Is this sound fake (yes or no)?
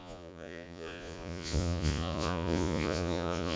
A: yes